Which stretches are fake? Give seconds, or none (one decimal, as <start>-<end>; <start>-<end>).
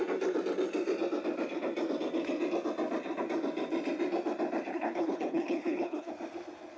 4.7-6.1